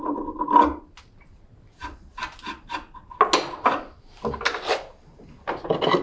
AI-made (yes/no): no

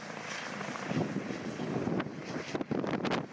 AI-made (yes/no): no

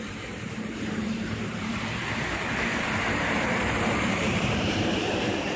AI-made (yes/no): yes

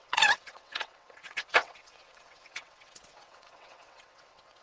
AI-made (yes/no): yes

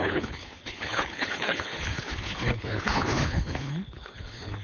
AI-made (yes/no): yes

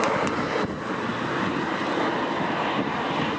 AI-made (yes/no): no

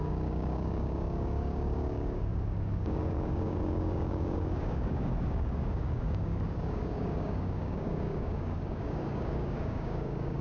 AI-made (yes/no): yes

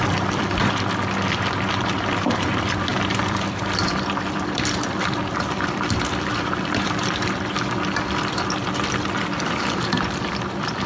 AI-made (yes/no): yes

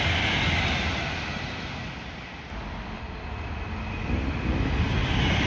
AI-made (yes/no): no